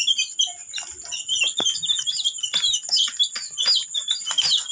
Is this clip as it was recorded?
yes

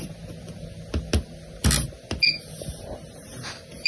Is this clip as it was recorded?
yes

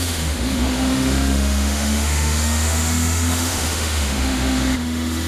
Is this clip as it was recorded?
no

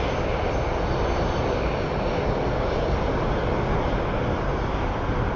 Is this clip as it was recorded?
yes